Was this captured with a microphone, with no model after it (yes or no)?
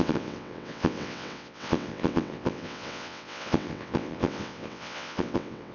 no